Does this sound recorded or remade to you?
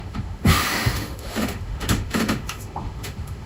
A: remade